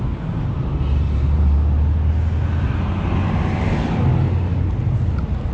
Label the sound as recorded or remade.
recorded